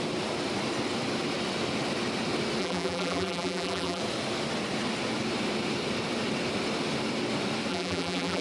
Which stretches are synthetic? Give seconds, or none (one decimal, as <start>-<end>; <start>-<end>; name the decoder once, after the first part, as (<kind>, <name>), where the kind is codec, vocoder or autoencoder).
2.6-4.0 (vocoder, BigVGAN v2); 7.7-8.4